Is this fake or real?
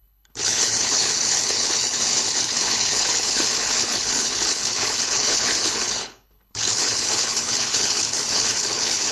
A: fake